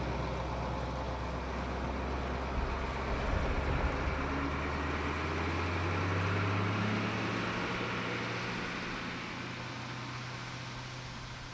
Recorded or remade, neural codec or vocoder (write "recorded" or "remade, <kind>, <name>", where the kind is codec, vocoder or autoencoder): recorded